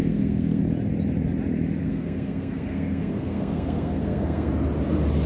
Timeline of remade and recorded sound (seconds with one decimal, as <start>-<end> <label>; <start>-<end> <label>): 0.0-0.6 remade; 0.6-1.8 recorded; 1.8-4.5 remade; 4.5-5.3 recorded